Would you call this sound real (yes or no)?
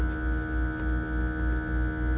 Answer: yes